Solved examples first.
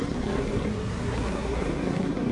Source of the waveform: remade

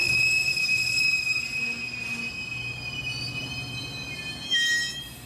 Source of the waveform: recorded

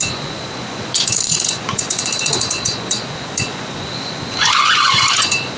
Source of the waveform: remade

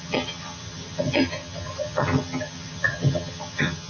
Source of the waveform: remade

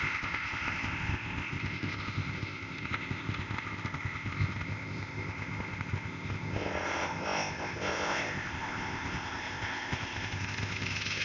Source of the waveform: remade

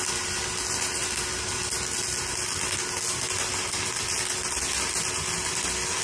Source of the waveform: recorded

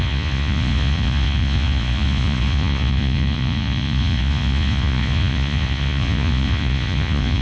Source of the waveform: remade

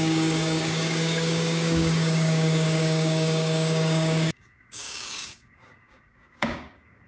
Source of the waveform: remade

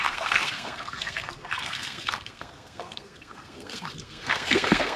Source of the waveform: remade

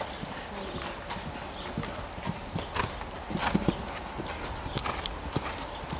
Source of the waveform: recorded